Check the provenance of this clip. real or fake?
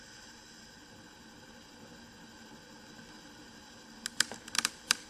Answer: real